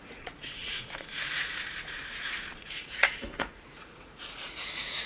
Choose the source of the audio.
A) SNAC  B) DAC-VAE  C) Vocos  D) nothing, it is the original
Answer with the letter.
C